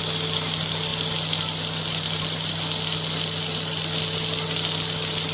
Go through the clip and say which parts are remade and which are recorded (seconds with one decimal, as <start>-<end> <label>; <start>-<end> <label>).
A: 0.0-5.3 recorded